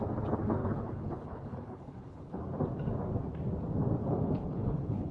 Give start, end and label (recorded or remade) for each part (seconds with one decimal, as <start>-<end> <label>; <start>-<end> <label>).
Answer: 0.0-0.6 recorded; 0.6-2.4 remade; 2.4-4.0 recorded; 4.0-5.1 remade